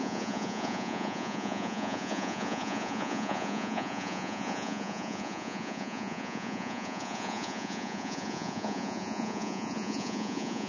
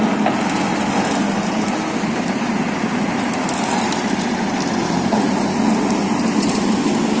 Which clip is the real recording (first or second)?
second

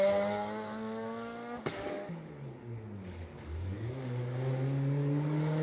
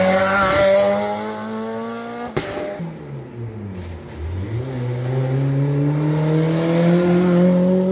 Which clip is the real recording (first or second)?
second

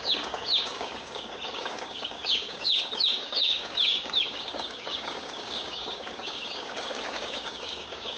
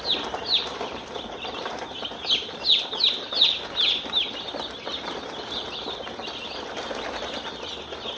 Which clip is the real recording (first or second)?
second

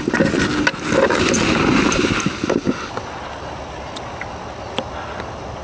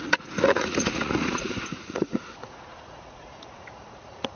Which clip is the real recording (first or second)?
first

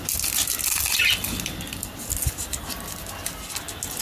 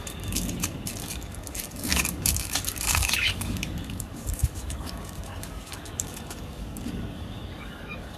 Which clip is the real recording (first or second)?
first